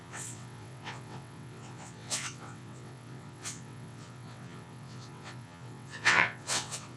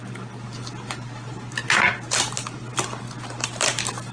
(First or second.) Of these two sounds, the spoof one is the first